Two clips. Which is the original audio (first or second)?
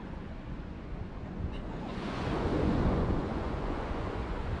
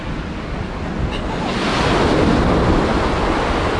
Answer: second